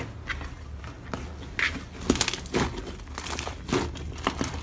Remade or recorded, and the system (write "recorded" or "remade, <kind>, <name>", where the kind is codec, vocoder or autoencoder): recorded